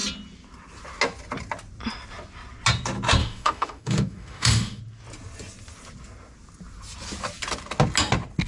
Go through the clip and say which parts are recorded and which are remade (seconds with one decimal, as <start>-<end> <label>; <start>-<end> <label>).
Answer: 0.0-3.2 recorded; 3.2-4.8 remade; 4.8-8.5 recorded